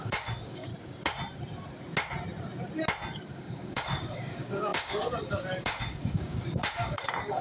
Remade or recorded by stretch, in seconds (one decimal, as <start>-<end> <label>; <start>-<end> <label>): 0.0-0.7 remade; 0.7-3.3 recorded; 3.3-7.4 remade